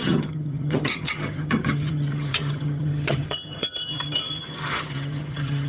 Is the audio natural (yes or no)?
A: no